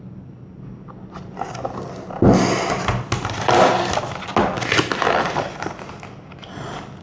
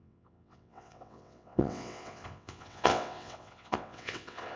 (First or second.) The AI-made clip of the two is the second